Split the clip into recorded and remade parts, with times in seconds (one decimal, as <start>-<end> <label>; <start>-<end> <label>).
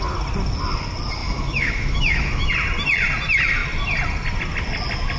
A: 0.0-1.2 recorded; 1.2-2.5 remade; 2.5-5.2 recorded